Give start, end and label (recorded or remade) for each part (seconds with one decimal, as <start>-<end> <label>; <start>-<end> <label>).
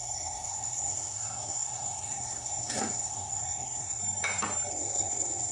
0.0-4.0 remade; 4.0-4.7 recorded; 4.7-5.5 remade